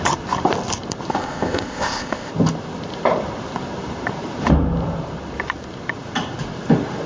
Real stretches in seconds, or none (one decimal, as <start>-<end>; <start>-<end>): 0.0-1.1; 2.3-7.1